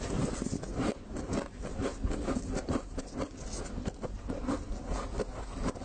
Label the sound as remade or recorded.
recorded